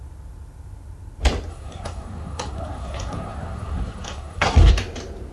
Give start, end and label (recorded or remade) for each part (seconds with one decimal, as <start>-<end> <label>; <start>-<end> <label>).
0.0-1.5 recorded; 1.5-4.7 remade; 4.7-5.3 recorded

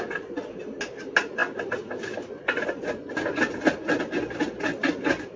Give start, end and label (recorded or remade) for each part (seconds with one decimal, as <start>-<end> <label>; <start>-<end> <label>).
0.0-5.4 recorded

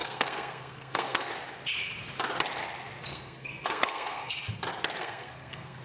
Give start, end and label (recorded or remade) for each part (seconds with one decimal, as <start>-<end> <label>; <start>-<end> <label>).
0.0-1.3 remade; 1.3-3.1 recorded; 3.1-4.3 remade; 4.3-5.0 recorded; 5.0-5.8 remade

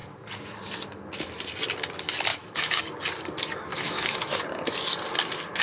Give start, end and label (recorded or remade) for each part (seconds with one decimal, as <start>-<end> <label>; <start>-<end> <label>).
0.0-2.3 recorded; 2.3-2.8 remade; 2.8-3.7 recorded; 3.7-4.4 remade; 4.4-5.6 recorded

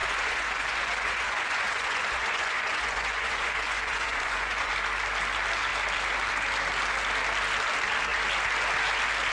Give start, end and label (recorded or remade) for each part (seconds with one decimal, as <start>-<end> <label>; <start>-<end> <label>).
0.0-4.7 remade; 4.7-9.3 recorded

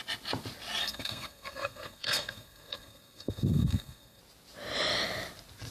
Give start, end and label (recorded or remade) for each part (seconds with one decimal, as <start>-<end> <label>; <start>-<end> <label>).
0.0-0.8 recorded; 0.8-4.2 remade; 4.2-5.7 recorded

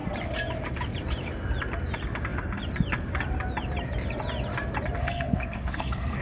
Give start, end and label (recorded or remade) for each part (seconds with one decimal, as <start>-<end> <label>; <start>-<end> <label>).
0.0-5.0 recorded; 5.0-6.2 remade